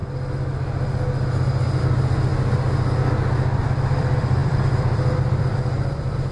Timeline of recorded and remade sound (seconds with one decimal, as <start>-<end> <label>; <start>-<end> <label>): 0.0-1.8 recorded; 1.8-2.3 remade; 2.3-3.6 recorded; 3.6-6.3 remade

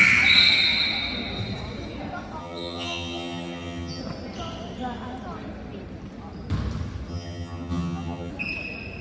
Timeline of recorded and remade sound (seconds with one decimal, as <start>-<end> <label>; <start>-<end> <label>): 0.0-2.4 recorded; 2.4-4.0 remade; 4.0-7.1 recorded; 7.1-8.3 remade; 8.3-9.0 recorded

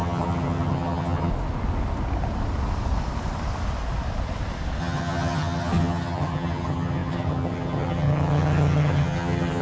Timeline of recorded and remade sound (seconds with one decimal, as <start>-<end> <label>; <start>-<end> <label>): 0.0-1.3 remade; 1.3-4.8 recorded; 4.8-9.6 remade

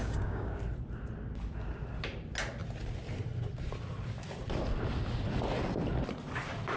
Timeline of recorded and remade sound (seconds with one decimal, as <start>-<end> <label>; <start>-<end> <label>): 0.0-0.6 remade; 0.6-6.8 recorded